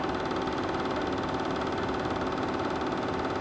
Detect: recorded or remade recorded